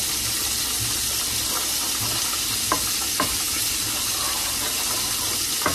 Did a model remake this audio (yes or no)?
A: no